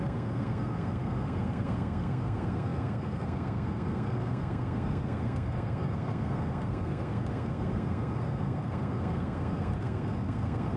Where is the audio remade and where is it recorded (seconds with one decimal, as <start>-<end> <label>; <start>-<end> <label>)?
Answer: 0.0-10.8 remade